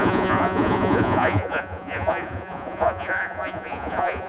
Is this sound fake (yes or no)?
yes